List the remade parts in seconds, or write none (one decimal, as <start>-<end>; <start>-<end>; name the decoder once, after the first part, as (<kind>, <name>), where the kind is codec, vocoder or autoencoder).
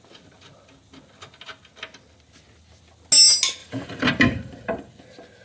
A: 3.6-4.9 (vocoder, BigVGAN v2)